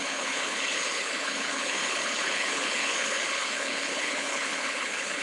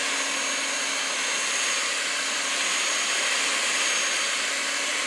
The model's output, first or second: first